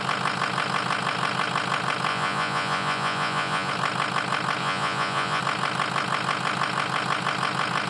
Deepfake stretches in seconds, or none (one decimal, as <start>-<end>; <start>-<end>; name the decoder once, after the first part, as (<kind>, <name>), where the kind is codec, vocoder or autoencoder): 2.1-3.7 (vocoder, Vocos); 4.6-5.4